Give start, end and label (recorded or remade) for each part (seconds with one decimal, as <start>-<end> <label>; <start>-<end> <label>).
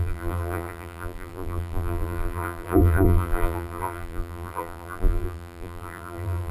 0.0-6.5 remade